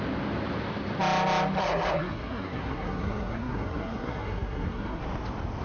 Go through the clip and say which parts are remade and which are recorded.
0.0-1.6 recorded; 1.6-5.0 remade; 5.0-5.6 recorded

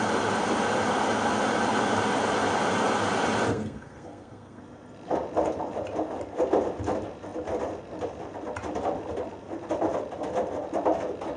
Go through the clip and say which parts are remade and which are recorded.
0.0-3.5 recorded; 3.5-4.6 remade; 4.6-11.4 recorded